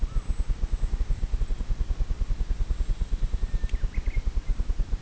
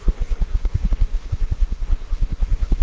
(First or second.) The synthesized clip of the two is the second